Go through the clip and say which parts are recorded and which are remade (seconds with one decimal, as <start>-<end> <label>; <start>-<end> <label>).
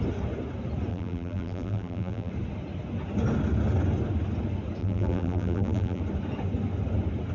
0.0-0.9 recorded; 0.9-2.3 remade; 2.3-4.8 recorded; 4.8-6.0 remade; 6.0-7.3 recorded